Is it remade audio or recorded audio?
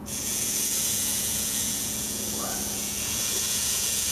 remade